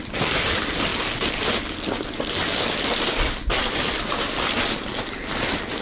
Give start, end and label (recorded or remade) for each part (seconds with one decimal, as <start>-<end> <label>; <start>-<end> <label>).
0.0-5.8 recorded